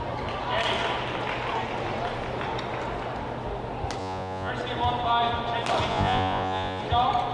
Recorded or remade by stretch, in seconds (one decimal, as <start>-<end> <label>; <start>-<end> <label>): 0.0-4.0 recorded; 4.0-4.5 remade; 4.5-5.9 recorded; 5.9-6.8 remade; 6.8-7.3 recorded